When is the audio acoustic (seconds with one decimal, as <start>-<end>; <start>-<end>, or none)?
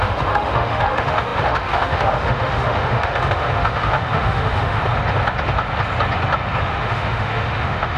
4.8-6.6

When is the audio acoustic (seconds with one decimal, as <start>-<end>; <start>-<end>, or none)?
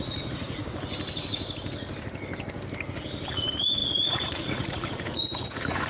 0.6-3.3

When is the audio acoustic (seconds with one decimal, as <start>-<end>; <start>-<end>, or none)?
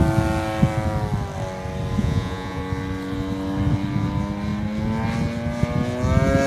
0.0-2.0; 2.6-6.5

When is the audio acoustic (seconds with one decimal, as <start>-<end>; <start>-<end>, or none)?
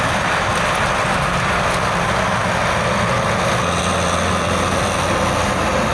0.0-5.9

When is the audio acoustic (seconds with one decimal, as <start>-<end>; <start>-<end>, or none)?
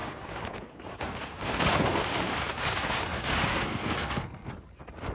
0.0-3.5; 4.5-5.1